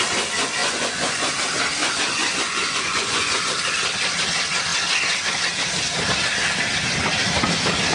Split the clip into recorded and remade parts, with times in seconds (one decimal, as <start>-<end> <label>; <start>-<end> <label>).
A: 0.0-0.6 recorded; 0.6-1.3 remade; 1.3-1.8 recorded; 1.8-3.4 remade; 3.4-7.9 recorded